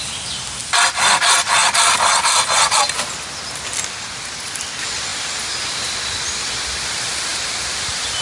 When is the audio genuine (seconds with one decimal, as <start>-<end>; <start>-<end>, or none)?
0.0-1.6; 2.9-7.3